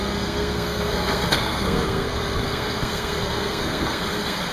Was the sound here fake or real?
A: fake